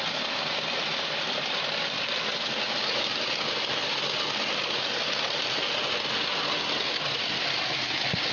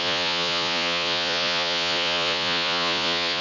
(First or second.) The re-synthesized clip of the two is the second